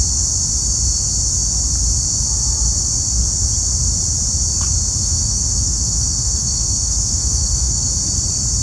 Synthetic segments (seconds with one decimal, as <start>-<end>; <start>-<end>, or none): 5.0-7.9